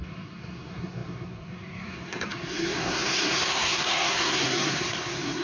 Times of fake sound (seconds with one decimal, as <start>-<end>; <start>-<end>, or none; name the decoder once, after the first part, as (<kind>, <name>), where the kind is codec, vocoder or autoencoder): 0.0-5.4 (codec, SNAC)